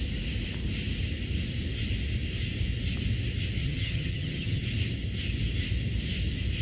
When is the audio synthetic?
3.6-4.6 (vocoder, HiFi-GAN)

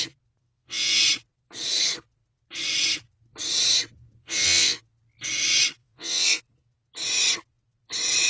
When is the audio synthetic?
0.4-1.0 (vocoder, WaveNeXt); 4.2-4.8; 5.8-6.4

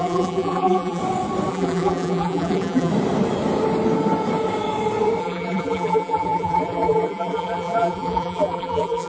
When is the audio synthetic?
0.0-1.0 (vocoder, BigVGAN v2); 1.5-2.9; 5.2-9.1

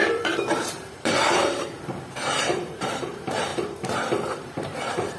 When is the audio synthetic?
0.0-5.2 (vocoder, BigVGAN v2)

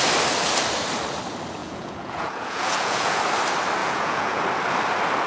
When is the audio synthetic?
1.6-3.2 (vocoder, Vocos); 3.8-4.4

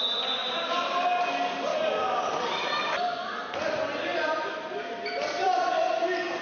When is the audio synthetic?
1.7-4.5 (vocoder, BigVGAN v2)

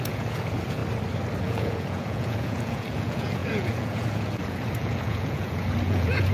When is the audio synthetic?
0.0-0.8 (vocoder, Vocos); 1.4-6.3

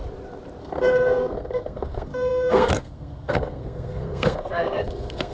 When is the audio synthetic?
0.6-5.3 (codec, SNAC)